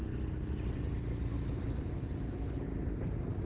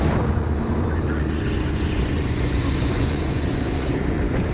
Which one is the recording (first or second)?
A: first